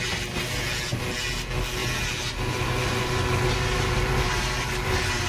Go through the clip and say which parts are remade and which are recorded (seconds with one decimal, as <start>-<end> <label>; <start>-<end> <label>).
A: 0.0-1.8 recorded; 1.8-5.3 remade